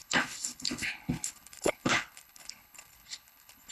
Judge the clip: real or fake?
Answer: fake